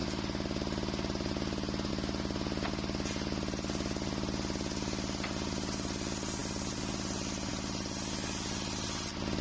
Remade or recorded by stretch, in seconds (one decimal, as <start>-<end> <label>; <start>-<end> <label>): 0.0-9.4 recorded